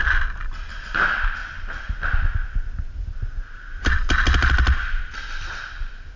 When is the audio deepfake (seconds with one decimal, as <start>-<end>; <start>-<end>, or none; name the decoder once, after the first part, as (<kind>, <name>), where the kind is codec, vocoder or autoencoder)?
none